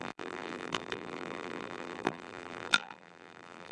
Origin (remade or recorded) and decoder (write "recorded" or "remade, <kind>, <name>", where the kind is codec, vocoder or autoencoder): remade, vocoder, BigVGAN v2